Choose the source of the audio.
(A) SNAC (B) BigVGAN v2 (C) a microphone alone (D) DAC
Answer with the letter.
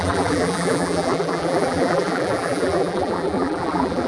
B